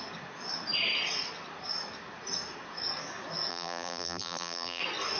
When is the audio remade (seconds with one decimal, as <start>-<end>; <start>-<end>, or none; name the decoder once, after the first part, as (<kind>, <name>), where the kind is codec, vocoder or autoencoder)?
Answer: 3.5-4.8 (vocoder, BigVGAN v2)